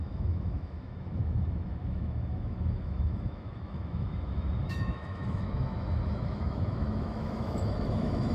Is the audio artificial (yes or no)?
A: yes